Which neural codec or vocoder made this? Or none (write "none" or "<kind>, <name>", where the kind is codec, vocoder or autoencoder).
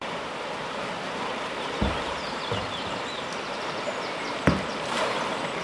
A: vocoder, BigVGAN v2